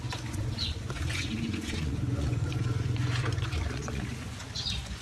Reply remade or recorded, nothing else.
remade